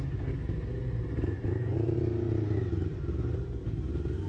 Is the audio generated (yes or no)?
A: no